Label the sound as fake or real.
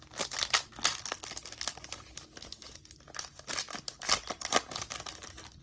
real